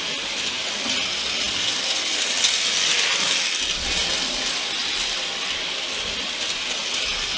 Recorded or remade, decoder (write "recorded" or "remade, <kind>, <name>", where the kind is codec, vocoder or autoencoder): recorded